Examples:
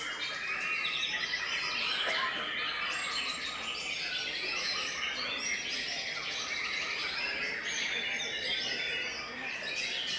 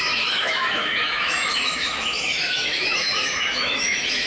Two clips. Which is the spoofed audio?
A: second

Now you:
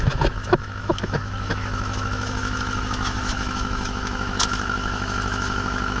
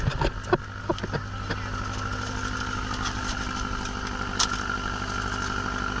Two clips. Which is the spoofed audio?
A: first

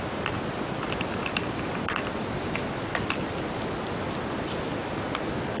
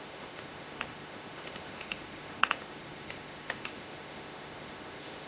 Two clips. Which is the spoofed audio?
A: second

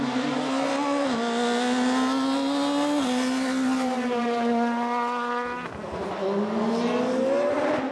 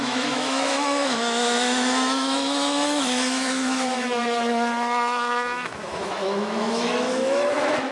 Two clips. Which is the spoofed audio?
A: second